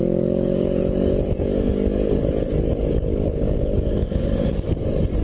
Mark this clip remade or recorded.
remade